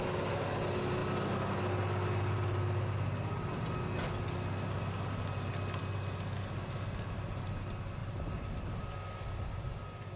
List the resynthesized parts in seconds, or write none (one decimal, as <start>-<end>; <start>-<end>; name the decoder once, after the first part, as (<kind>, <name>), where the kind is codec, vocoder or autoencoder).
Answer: none